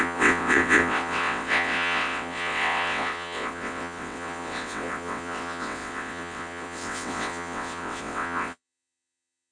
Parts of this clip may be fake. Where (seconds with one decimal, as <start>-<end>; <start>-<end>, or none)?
0.0-9.5